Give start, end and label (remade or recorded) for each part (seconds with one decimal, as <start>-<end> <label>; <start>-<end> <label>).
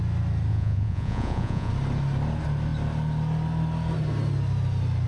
0.0-0.5 recorded; 0.5-1.7 remade; 1.7-5.1 recorded